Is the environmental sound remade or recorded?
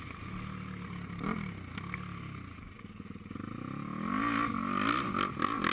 recorded